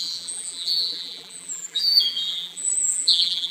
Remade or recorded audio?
remade